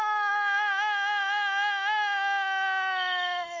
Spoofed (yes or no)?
no